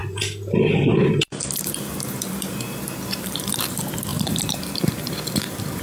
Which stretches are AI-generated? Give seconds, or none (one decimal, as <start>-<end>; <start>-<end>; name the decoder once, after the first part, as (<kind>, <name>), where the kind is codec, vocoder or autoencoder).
0.0-3.5 (vocoder, BigVGAN v2); 4.1-5.8